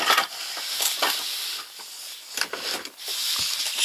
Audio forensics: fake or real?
real